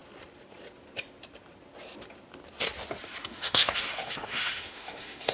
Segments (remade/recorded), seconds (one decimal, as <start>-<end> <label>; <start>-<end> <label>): 0.0-3.2 recorded; 3.2-5.3 remade